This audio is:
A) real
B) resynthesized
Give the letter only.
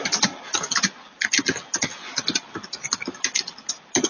A